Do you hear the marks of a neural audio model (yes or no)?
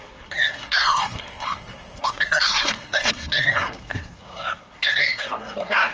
yes